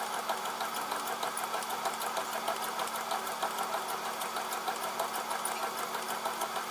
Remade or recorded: recorded